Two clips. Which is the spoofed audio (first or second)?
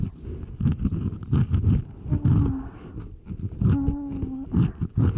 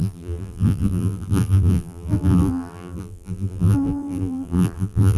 second